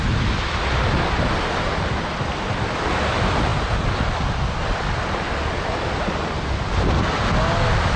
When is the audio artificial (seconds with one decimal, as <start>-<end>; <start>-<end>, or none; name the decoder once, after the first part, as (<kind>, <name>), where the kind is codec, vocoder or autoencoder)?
none